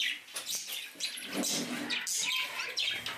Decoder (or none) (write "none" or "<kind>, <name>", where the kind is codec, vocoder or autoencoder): none